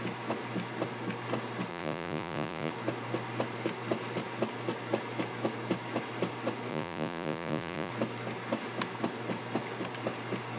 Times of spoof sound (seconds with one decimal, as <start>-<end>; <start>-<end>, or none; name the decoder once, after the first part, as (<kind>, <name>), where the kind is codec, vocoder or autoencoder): 1.7-2.7 (vocoder, Vocos); 6.7-7.9